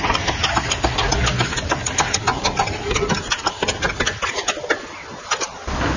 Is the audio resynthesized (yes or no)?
no